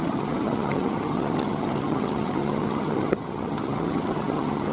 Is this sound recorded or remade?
remade